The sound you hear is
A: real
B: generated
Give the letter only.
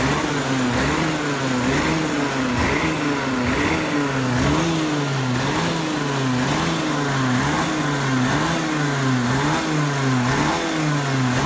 A